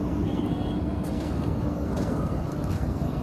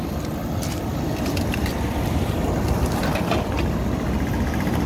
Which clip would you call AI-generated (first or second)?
first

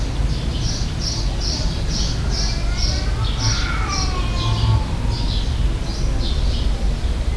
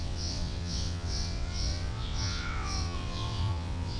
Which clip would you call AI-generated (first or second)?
second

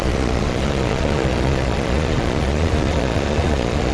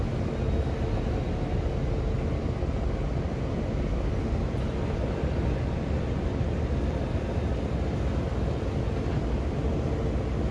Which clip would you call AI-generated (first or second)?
first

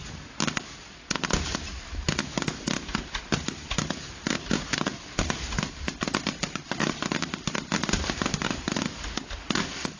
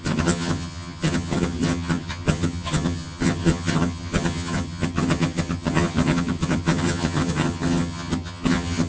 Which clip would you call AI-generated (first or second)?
second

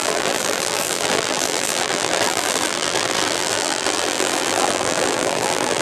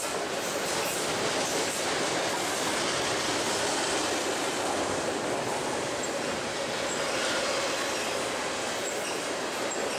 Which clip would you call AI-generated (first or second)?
first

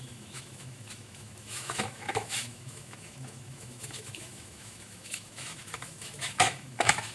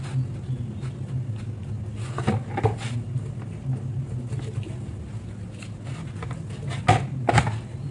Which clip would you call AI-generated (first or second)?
first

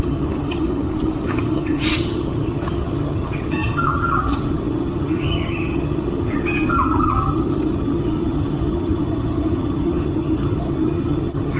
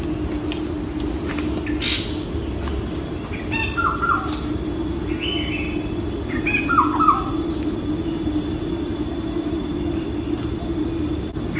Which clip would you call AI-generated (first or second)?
first